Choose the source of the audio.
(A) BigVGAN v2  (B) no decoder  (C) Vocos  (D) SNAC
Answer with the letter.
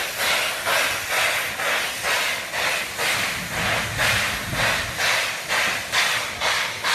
B